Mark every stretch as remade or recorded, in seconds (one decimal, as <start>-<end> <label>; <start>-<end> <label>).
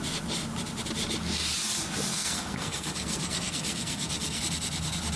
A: 0.0-2.1 recorded; 2.1-4.4 remade; 4.4-5.2 recorded